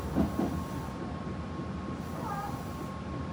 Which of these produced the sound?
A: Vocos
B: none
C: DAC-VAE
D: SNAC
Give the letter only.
B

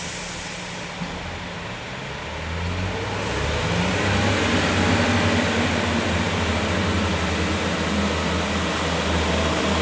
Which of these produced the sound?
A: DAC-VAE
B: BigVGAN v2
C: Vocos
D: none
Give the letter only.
D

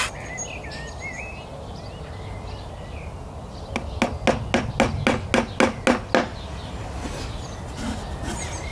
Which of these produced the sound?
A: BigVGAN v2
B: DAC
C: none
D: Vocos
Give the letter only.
C